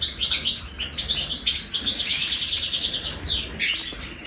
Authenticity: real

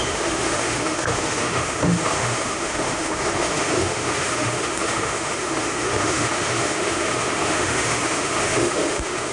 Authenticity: fake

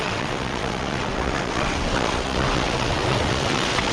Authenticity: fake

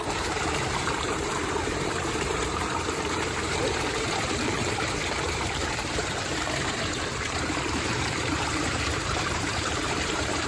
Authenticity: fake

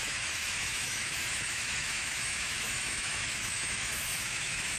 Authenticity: fake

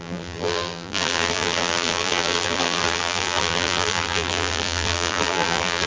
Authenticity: fake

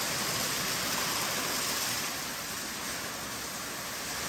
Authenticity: real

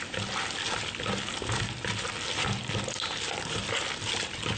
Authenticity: real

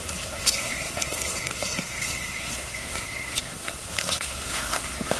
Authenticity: fake